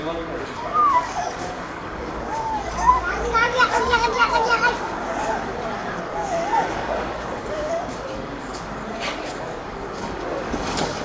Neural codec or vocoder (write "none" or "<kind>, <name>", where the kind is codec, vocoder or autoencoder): codec, DAC